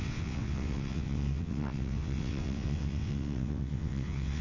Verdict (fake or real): fake